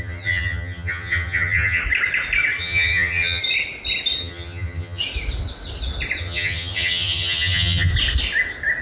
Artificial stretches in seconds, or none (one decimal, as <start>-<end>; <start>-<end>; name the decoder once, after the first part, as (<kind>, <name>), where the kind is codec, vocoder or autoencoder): 0.0-1.8 (vocoder, HiFi-GAN); 2.6-3.4; 4.2-5.0; 6.2-7.9